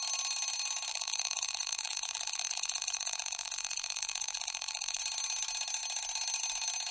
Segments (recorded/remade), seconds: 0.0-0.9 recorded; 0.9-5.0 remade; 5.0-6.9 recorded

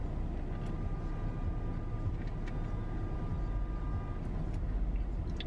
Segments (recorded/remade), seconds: 0.0-5.5 recorded

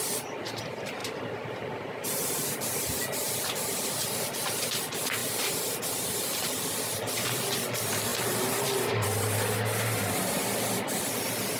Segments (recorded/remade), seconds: 0.0-1.0 recorded; 1.0-4.5 remade; 4.5-5.2 recorded; 5.2-5.8 remade; 5.8-8.1 recorded; 8.1-8.6 remade; 8.6-11.6 recorded

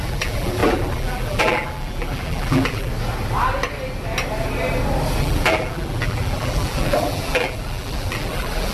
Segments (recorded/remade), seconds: 0.0-2.9 remade; 2.9-5.2 recorded; 5.2-8.7 remade